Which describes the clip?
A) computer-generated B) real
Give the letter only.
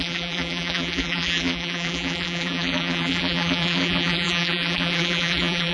A